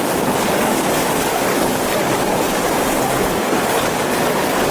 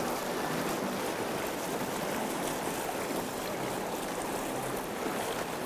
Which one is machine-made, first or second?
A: first